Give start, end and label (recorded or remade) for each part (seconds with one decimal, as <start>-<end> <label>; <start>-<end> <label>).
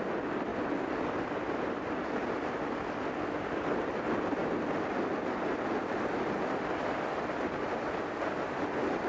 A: 0.0-9.1 recorded